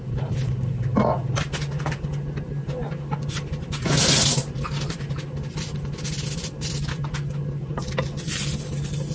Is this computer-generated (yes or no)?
no